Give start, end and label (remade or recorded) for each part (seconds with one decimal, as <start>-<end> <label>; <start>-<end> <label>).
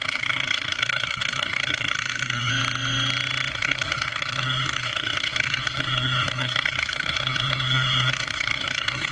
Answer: 0.0-2.5 remade; 2.5-3.5 recorded; 3.5-9.1 remade